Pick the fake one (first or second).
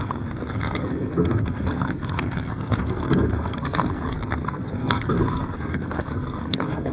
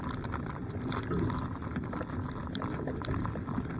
first